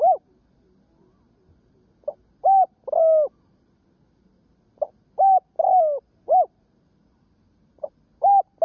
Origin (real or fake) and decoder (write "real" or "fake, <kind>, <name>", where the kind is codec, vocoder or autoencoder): real